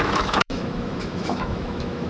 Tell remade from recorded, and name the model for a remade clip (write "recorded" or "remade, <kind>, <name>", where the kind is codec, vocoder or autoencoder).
remade, autoencoder, DAC-VAE